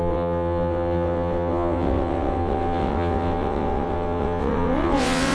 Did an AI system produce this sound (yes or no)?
yes